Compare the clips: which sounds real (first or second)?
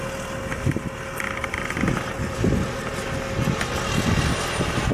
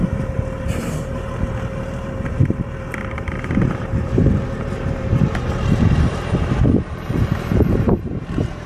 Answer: first